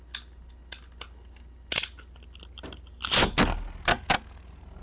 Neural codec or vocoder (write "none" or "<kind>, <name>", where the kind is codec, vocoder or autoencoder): none